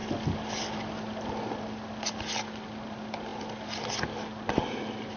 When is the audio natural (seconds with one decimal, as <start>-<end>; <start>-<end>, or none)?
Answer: 0.0-5.2